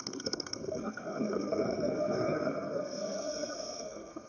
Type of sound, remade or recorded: remade